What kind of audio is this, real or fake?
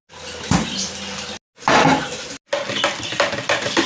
real